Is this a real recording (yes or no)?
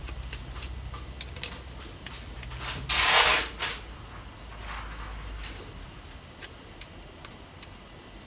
yes